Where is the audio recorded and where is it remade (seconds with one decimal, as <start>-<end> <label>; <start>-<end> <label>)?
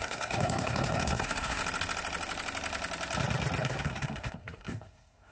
0.0-1.6 remade; 1.6-3.6 recorded; 3.6-5.3 remade